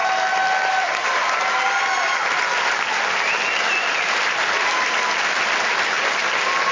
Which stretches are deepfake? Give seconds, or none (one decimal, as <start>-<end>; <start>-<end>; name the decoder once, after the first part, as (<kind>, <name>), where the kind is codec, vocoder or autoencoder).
none